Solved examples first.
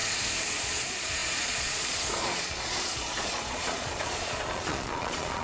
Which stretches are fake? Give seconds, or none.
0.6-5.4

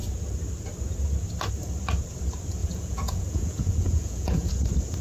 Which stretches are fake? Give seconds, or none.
2.6-4.5

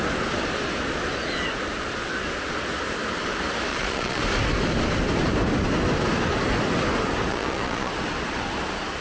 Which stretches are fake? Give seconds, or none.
3.7-4.2; 7.3-7.9